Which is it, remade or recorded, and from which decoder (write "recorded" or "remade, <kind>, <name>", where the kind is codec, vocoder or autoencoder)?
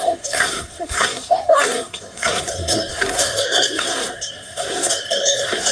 remade, codec, SNAC